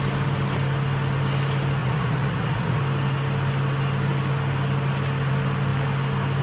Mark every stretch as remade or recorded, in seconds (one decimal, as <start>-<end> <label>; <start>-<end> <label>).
0.0-1.8 recorded; 1.8-2.8 remade; 2.8-6.4 recorded